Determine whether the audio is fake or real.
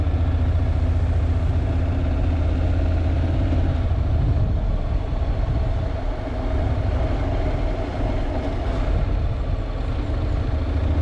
real